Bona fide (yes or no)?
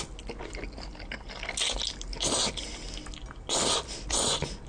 yes